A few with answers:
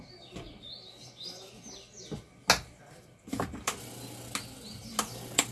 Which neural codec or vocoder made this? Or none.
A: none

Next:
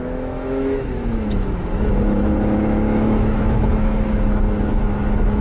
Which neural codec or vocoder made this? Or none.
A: autoencoder, DAC-VAE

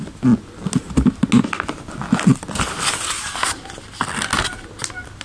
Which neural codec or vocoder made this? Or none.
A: none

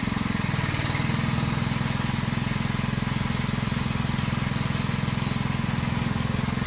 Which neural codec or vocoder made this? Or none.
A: none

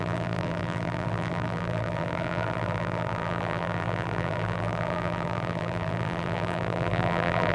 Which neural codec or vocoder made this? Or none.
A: vocoder, BigVGAN v2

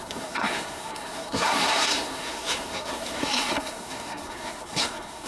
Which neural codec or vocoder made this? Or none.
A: codec, SNAC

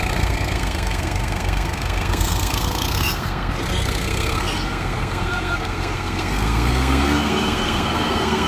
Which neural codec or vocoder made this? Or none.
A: codec, SNAC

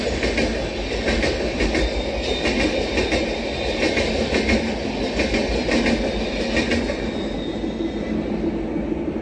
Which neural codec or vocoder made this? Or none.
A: none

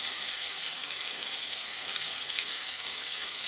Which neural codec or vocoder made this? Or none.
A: codec, SNAC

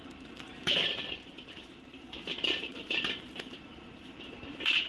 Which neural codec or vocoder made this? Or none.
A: vocoder, BigVGAN v2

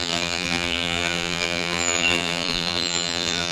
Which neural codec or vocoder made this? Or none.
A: vocoder, BigVGAN v2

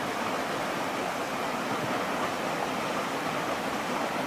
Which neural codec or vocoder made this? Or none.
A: none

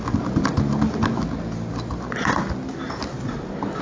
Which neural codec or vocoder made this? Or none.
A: none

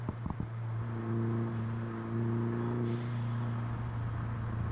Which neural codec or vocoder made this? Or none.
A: none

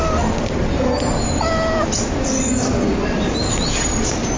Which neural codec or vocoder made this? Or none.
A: none